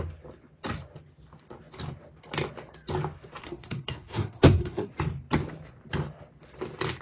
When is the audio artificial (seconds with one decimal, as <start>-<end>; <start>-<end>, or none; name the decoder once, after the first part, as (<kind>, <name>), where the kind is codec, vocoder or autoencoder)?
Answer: 3.4-4.9 (codec, SNAC)